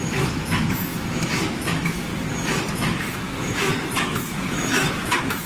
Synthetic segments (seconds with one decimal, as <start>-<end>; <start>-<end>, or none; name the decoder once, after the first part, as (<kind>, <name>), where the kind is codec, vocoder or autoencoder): 0.0-2.1 (autoencoder, DAC-VAE); 2.7-5.5